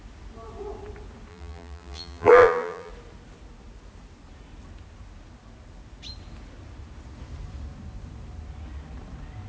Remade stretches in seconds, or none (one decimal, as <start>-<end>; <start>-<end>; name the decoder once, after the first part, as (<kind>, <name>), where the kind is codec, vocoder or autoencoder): 1.3-2.9 (vocoder, BigVGAN v2)